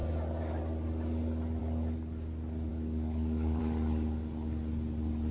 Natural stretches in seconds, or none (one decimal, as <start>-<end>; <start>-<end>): 0.0-2.7; 3.6-5.3